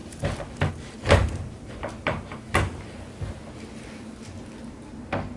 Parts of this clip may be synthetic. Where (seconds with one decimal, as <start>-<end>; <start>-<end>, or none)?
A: none